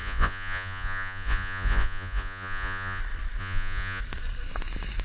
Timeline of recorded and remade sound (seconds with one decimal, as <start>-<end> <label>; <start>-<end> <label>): 0.0-3.0 remade; 3.0-3.4 recorded; 3.4-4.0 remade; 4.0-5.0 recorded